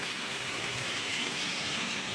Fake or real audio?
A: fake